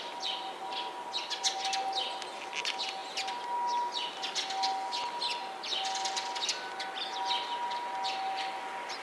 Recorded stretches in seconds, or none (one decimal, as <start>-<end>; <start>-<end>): 0.0-9.0